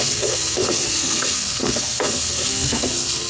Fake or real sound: fake